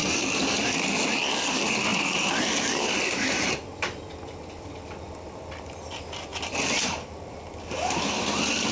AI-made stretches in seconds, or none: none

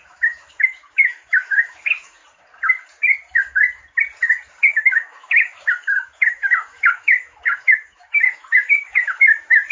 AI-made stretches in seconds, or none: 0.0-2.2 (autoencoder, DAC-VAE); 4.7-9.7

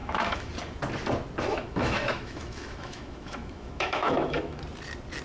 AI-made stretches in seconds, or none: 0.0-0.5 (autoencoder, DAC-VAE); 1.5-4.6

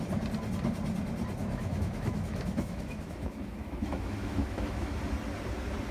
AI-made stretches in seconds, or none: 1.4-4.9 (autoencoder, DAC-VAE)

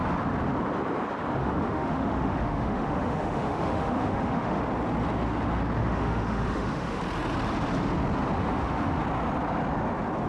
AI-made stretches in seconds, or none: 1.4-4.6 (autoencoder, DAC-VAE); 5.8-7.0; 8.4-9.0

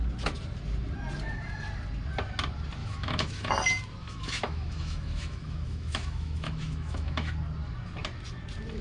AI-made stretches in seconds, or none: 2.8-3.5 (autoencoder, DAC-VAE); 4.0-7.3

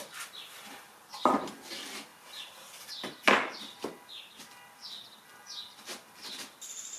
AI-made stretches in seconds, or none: none